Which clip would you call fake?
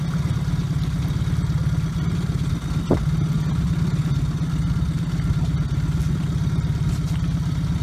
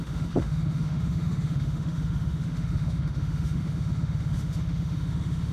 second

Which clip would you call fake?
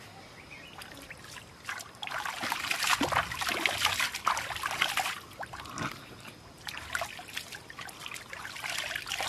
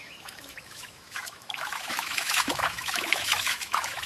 second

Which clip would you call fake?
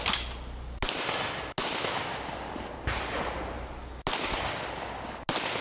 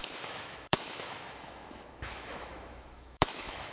second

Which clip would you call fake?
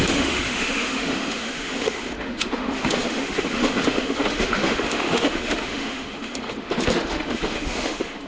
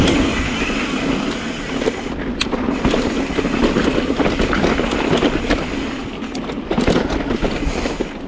first